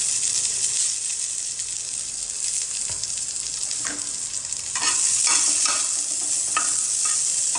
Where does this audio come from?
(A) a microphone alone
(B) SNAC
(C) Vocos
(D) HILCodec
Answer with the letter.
A